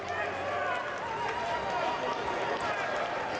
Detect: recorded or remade recorded